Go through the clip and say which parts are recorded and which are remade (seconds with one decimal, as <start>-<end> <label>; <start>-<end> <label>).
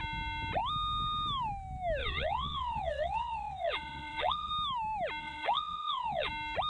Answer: 0.0-2.0 recorded; 2.0-4.5 remade; 4.5-5.2 recorded; 5.2-6.3 remade; 6.3-6.7 recorded